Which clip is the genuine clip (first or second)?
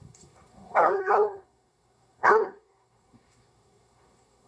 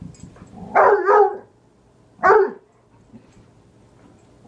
second